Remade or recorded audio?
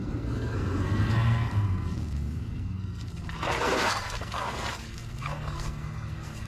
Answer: remade